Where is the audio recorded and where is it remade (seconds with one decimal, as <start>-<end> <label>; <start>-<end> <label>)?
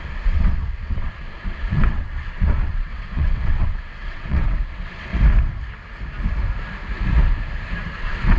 0.0-5.1 remade; 5.1-8.0 recorded; 8.0-8.4 remade